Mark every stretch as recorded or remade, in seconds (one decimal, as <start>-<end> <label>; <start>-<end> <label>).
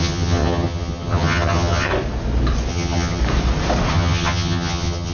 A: 0.0-1.9 remade; 1.9-2.7 recorded; 2.7-3.2 remade; 3.2-3.9 recorded; 3.9-5.1 remade